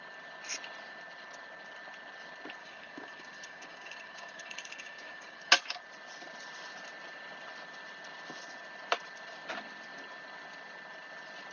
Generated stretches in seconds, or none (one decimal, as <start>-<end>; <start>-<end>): 2.6-5.5

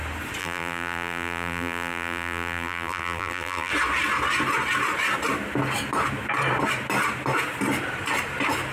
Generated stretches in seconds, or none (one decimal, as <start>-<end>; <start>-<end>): 0.4-3.7

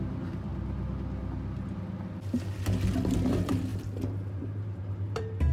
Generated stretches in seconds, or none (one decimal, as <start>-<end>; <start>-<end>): 0.0-0.5; 3.3-3.7; 4.3-5.5

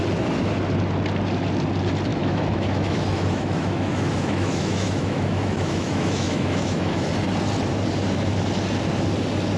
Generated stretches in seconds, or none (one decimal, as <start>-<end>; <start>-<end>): 2.1-7.1

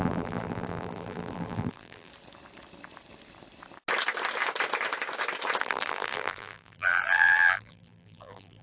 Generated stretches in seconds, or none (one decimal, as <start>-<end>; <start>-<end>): 0.0-2.1; 5.6-8.6